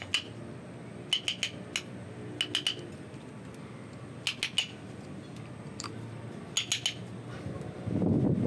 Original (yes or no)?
yes